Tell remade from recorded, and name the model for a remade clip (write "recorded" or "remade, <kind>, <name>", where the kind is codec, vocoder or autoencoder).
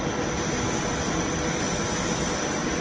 recorded